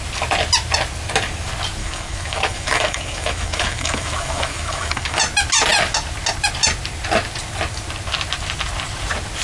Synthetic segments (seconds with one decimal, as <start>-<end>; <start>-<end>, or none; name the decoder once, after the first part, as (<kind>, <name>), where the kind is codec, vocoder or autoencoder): 1.8-5.2 (autoencoder, DAC-VAE)